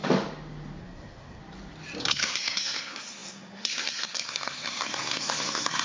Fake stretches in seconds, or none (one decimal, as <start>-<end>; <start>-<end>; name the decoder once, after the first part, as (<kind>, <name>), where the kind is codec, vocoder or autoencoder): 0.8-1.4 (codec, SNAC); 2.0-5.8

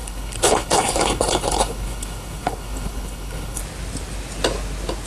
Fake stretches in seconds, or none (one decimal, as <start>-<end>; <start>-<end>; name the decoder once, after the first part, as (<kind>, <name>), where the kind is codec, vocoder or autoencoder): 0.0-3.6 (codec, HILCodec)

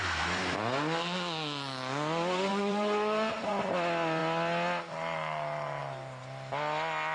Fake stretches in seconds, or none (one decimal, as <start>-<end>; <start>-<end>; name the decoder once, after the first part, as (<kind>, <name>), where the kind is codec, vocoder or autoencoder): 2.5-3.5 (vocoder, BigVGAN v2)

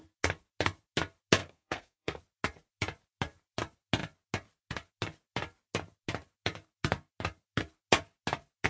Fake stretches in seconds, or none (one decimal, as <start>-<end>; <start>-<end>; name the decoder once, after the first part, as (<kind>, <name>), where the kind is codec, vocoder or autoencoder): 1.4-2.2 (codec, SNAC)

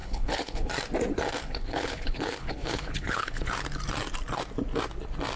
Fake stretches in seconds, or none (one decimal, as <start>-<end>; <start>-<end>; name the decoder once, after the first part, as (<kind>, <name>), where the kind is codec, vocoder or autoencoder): 0.0-0.7 (codec, HILCodec); 1.4-3.5

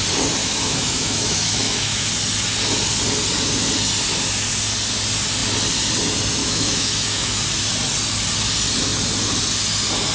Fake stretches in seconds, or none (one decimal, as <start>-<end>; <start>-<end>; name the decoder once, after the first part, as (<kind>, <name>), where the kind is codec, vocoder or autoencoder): 0.4-2.1 (autoencoder, DAC-VAE); 6.4-7.4

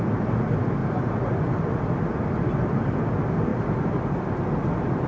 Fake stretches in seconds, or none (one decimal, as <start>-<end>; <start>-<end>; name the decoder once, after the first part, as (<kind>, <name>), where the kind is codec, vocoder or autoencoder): 0.8-2.5 (vocoder, BigVGAN v2); 3.5-4.0